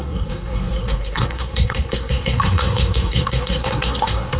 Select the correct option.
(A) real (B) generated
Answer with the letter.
B